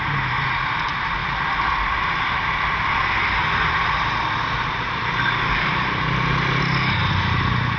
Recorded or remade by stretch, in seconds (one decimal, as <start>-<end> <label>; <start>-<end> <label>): 0.0-1.2 recorded; 1.2-3.4 remade; 3.4-3.8 recorded; 3.8-6.6 remade; 6.6-7.8 recorded